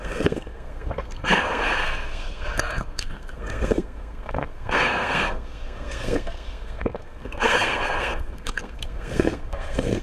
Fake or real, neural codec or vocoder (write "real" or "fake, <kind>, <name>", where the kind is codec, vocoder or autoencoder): fake, codec, SNAC